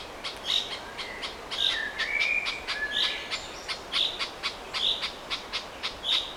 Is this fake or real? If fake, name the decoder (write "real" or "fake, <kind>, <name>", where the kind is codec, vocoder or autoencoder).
real